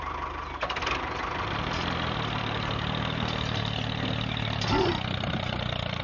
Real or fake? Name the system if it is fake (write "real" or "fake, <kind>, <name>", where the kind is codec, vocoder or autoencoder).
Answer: real